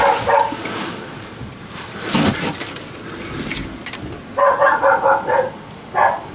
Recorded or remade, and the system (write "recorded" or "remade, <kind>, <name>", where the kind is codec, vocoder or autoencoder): recorded